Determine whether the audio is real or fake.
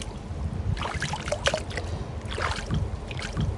real